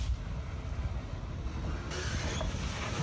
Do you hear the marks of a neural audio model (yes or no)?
no